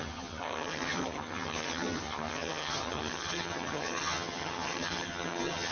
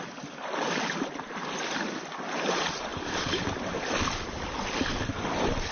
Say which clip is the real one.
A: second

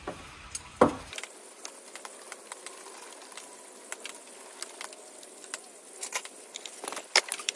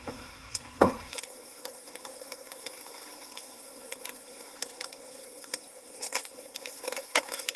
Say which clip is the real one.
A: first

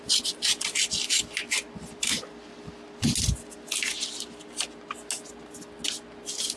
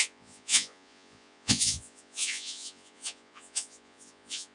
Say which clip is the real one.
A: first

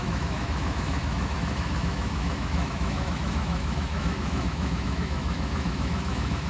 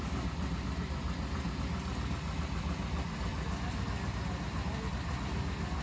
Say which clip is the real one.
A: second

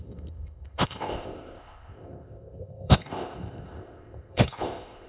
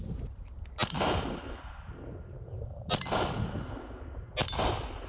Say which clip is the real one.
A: second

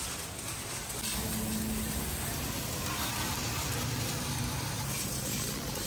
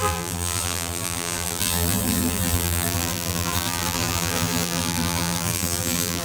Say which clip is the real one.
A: first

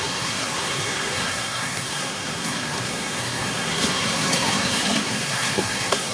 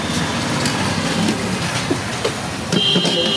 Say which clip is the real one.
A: second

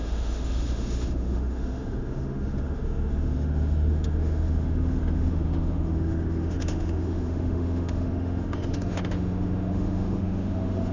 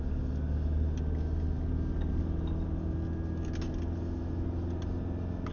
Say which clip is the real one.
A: second